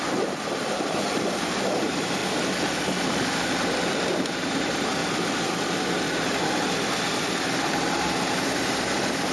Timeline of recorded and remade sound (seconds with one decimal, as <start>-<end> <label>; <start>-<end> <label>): 0.0-2.2 remade; 2.2-4.3 recorded; 4.3-5.0 remade; 5.0-7.2 recorded; 7.2-9.3 remade